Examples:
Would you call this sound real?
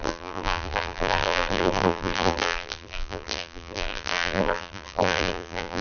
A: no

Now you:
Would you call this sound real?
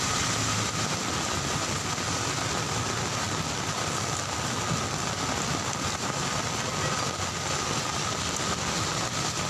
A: yes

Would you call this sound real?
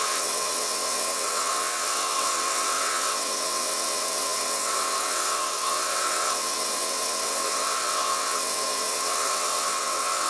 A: no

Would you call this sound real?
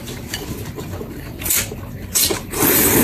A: no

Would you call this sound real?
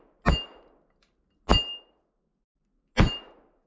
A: yes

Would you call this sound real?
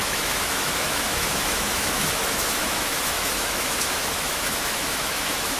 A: no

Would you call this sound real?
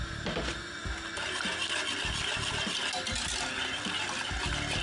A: yes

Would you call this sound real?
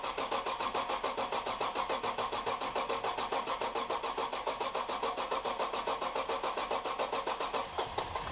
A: yes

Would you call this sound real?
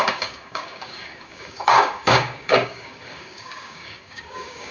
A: no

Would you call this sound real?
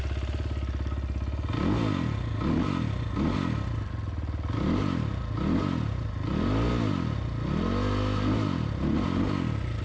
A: yes